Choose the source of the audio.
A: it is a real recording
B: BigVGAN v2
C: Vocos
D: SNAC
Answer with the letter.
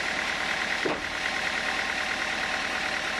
A